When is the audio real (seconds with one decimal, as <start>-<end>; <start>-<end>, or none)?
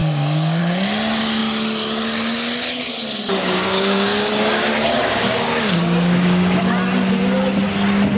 0.6-3.3; 6.6-8.2